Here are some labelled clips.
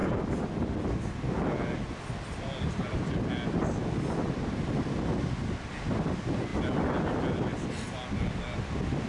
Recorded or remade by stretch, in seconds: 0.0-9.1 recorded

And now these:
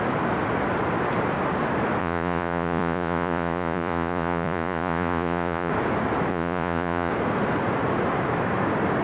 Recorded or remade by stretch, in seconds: 0.0-2.0 recorded; 2.0-5.7 remade; 5.7-6.3 recorded; 6.3-7.1 remade; 7.1-9.0 recorded

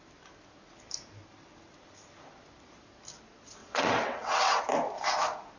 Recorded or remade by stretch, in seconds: 0.0-3.6 recorded; 3.6-4.6 remade; 4.6-5.6 recorded

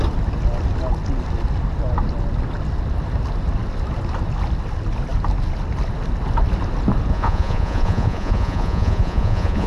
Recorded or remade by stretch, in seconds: 0.0-7.1 recorded; 7.1-9.7 remade

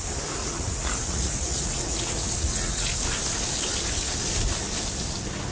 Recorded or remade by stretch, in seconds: 0.0-0.4 recorded; 0.4-2.9 remade; 2.9-5.5 recorded

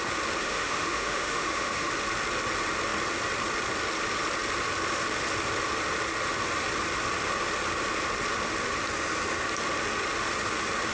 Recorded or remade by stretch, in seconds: 0.0-0.4 recorded; 0.4-1.9 remade; 1.9-10.9 recorded